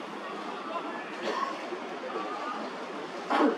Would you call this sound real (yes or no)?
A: yes